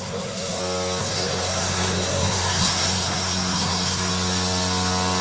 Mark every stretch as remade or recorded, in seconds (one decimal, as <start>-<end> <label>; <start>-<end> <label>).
0.0-0.6 remade; 0.6-1.0 recorded; 1.0-4.1 remade; 4.1-5.2 recorded